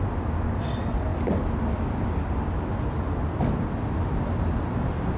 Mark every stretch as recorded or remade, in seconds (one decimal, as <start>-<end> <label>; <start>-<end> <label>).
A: 0.0-5.2 recorded